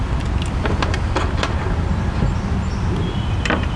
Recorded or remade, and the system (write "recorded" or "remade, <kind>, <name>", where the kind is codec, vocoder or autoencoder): recorded